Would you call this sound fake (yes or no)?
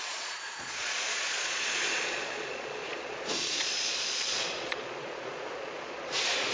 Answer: yes